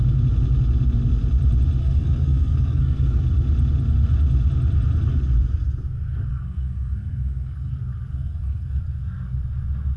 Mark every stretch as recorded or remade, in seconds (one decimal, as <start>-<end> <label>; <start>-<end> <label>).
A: 0.0-1.8 recorded; 1.8-3.2 remade; 3.2-6.3 recorded; 6.3-7.7 remade; 7.7-8.1 recorded; 8.1-8.8 remade; 8.8-10.0 recorded